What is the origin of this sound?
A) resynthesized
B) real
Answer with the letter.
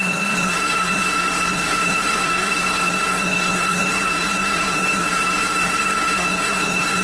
A